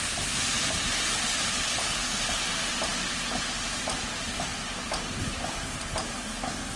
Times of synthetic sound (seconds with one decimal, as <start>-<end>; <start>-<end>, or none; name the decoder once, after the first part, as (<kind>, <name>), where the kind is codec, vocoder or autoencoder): 1.5-2.2 (codec, HILCodec)